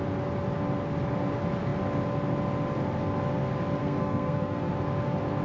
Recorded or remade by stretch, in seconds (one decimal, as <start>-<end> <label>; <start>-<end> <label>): 0.0-3.8 recorded; 3.8-4.7 remade; 4.7-5.4 recorded